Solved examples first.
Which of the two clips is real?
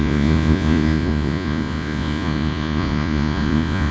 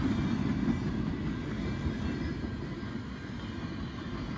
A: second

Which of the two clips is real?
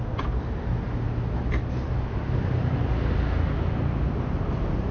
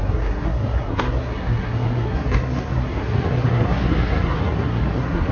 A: first